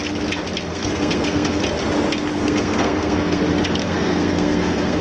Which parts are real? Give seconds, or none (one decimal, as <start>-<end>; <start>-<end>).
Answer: 0.0-0.7; 1.6-2.3; 3.4-3.8